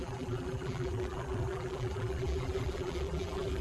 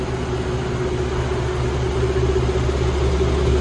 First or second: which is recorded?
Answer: second